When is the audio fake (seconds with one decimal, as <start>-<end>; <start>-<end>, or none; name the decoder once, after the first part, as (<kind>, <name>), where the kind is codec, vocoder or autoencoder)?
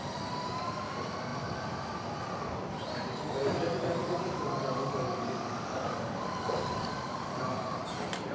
4.0-7.4 (codec, DAC)